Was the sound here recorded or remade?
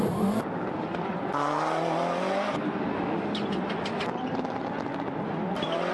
recorded